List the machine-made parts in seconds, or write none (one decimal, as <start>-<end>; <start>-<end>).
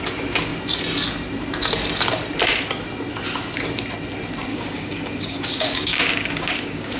4.5-7.0